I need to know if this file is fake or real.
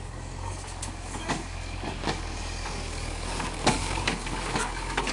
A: fake